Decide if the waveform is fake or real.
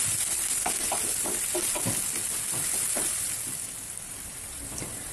real